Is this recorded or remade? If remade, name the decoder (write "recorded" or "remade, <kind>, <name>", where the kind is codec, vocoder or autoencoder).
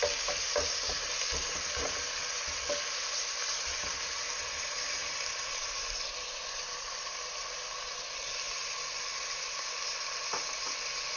recorded